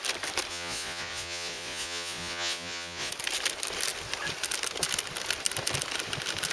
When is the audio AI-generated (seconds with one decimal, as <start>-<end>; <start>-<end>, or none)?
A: 0.5-3.1